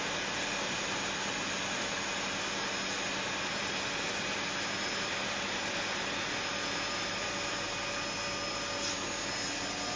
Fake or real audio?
real